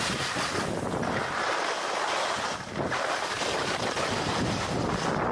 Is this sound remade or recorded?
recorded